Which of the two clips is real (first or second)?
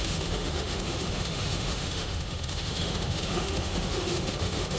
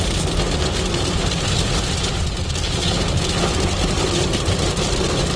second